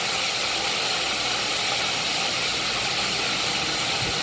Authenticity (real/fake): real